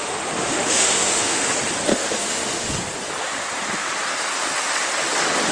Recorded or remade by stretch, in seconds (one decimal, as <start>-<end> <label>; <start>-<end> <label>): 0.0-1.5 remade; 1.5-1.9 recorded; 1.9-2.7 remade; 2.7-5.5 recorded